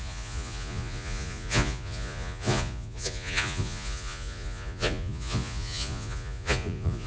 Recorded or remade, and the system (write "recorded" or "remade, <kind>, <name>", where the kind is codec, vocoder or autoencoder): remade, vocoder, Vocos